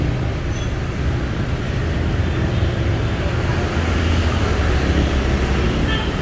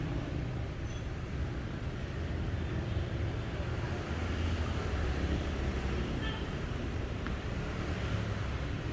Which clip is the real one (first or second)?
first